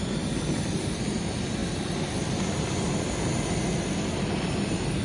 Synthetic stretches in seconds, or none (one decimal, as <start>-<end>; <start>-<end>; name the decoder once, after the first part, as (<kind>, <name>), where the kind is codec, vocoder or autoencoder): none